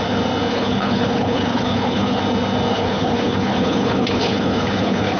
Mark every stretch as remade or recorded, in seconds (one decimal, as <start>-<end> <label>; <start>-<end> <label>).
0.0-0.5 recorded; 0.5-2.2 remade; 2.2-2.7 recorded; 2.7-5.2 remade